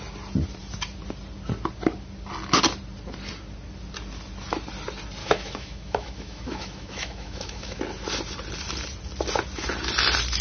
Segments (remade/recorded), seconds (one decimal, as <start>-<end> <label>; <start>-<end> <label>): 0.0-5.2 recorded; 5.2-7.8 remade; 7.8-10.4 recorded